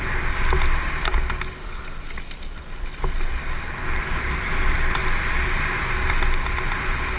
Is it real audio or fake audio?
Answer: real